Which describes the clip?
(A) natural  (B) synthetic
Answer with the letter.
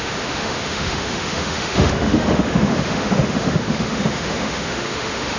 B